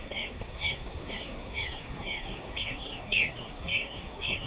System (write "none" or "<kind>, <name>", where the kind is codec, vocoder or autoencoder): codec, SNAC